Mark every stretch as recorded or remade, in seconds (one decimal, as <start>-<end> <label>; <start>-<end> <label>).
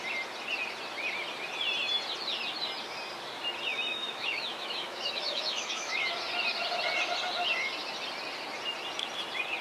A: 0.0-3.7 recorded; 3.7-6.1 remade; 6.1-9.6 recorded